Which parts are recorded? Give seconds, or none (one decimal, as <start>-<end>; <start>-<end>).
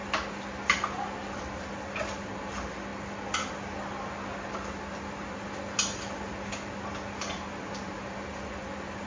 0.0-9.1